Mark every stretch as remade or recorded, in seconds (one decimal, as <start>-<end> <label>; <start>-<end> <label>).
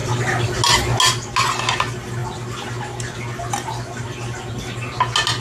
0.0-5.4 recorded